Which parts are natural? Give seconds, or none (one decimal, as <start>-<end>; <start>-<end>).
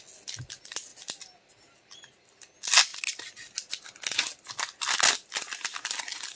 0.0-6.4